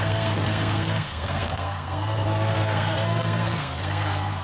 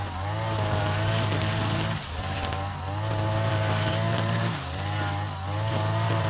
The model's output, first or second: first